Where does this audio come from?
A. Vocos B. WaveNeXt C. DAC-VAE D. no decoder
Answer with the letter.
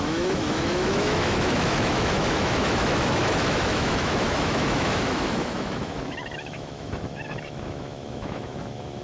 C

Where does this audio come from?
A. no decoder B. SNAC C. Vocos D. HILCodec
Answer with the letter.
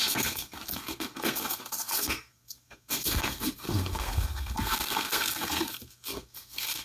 B